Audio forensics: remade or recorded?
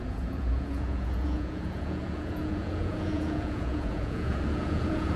remade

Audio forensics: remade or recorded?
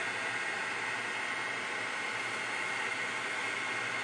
recorded